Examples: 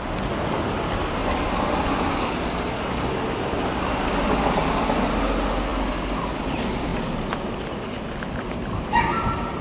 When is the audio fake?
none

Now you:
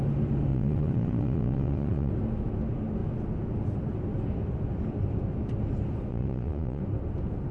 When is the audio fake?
0.5-2.1 (vocoder, Vocos); 6.1-6.8

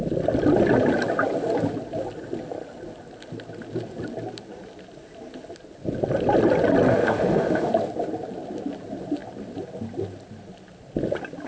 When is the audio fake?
6.9-7.7 (autoencoder, DAC-VAE)

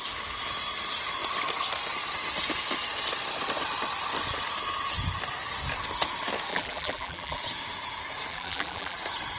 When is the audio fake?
6.5-7.4 (vocoder, BigVGAN v2); 8.3-9.0